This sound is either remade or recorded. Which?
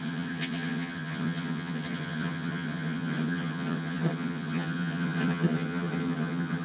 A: remade